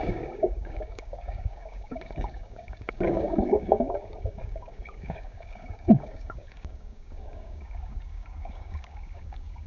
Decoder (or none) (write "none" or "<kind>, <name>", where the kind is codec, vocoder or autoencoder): codec, DAC